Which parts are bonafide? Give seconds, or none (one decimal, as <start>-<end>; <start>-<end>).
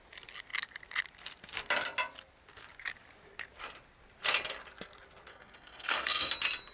0.0-5.3; 6.3-6.7